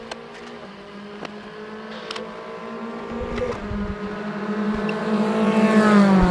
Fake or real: real